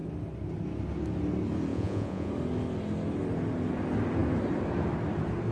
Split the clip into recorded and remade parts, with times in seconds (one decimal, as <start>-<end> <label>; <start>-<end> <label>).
0.0-1.7 recorded; 1.7-2.3 remade; 2.3-5.5 recorded